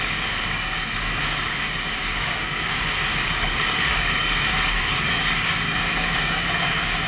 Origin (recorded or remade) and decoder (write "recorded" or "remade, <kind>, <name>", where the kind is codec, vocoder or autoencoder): remade, codec, DAC